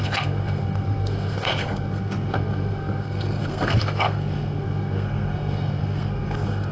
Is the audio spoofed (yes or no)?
yes